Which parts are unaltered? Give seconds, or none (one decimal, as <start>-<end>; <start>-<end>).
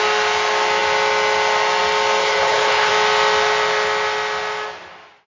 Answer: 0.0-2.2; 2.9-5.3